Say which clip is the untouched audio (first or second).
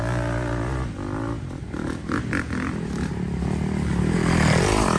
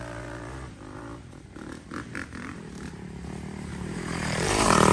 first